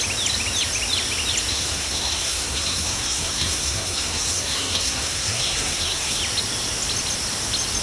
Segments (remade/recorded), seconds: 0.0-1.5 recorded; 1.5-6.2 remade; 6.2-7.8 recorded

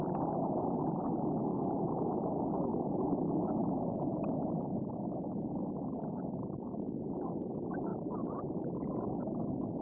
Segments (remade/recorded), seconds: 0.0-1.5 recorded; 1.5-2.0 remade; 2.0-7.9 recorded; 7.9-8.4 remade; 8.4-9.8 recorded